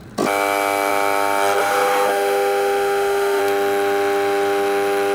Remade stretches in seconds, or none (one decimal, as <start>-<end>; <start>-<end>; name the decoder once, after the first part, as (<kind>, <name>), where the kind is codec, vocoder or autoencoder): 1.6-3.4 (autoencoder, DAC-VAE)